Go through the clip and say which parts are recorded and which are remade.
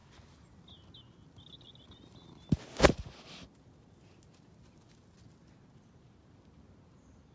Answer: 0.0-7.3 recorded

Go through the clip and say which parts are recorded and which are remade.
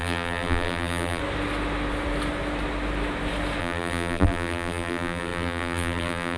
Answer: 0.0-1.2 remade; 1.2-3.6 recorded; 3.6-6.4 remade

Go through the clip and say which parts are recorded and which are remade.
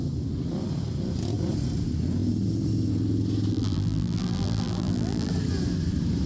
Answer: 0.0-3.5 recorded; 3.5-5.3 remade; 5.3-6.3 recorded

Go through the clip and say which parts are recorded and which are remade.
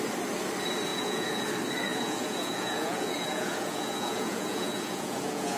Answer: 0.0-0.9 recorded; 0.9-1.5 remade; 1.5-1.9 recorded; 1.9-5.6 remade